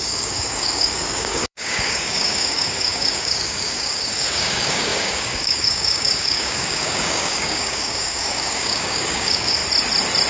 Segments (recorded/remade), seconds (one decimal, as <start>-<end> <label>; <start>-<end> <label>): 0.0-9.6 remade; 9.6-10.3 recorded